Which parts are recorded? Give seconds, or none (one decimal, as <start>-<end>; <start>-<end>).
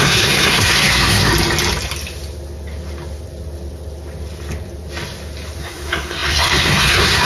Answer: 1.3-5.6